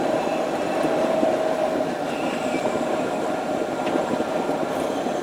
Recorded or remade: remade